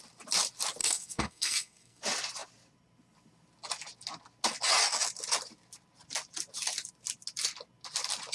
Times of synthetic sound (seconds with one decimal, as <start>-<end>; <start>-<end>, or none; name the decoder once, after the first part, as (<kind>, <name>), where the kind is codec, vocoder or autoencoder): 0.8-2.0 (codec, SNAC)

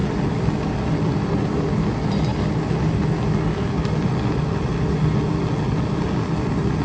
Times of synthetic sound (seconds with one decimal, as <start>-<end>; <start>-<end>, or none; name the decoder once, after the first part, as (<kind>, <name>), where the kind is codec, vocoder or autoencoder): none

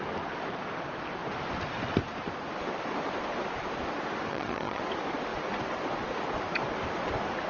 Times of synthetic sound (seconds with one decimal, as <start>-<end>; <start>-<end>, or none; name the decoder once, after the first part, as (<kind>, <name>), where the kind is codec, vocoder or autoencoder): 4.3-4.8 (vocoder, HiFi-GAN)

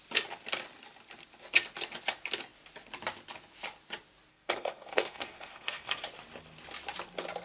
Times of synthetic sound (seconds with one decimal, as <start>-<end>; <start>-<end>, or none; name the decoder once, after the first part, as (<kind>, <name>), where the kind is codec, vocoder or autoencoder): 4.3-6.0 (codec, SNAC)

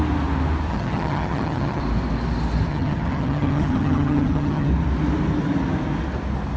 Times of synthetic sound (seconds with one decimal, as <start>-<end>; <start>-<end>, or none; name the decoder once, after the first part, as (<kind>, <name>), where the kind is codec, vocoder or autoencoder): 0.7-1.8 (vocoder, HiFi-GAN); 2.7-4.7

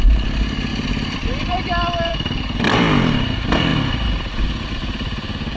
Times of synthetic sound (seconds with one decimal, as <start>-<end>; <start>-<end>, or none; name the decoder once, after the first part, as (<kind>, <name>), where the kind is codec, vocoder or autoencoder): 0.7-2.1 (vocoder, BigVGAN v2)

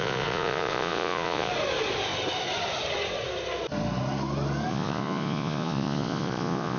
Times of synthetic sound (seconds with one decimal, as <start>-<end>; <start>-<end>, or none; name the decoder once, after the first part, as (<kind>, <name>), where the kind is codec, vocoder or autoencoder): 0.0-1.5 (vocoder, Vocos); 4.7-6.8